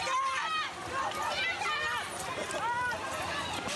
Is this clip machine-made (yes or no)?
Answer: no